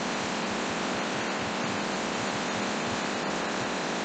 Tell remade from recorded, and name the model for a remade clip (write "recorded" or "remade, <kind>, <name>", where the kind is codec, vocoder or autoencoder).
remade, vocoder, BigVGAN v2